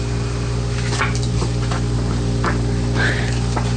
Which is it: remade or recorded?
recorded